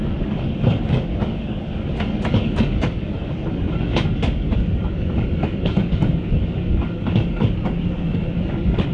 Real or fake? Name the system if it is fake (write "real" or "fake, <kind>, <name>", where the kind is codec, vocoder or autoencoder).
fake, codec, DAC